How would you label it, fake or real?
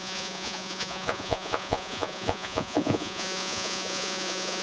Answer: fake